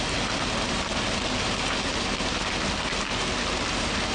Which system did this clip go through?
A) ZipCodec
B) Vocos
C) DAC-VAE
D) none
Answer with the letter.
D